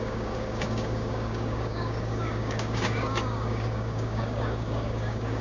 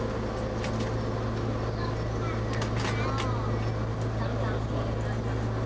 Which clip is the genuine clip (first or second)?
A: second